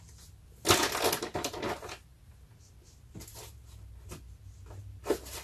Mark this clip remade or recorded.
recorded